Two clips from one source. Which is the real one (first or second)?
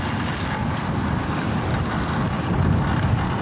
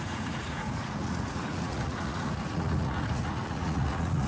first